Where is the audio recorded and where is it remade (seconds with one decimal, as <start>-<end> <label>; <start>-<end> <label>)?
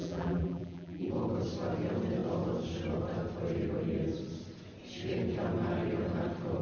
0.0-1.1 remade; 1.1-6.6 recorded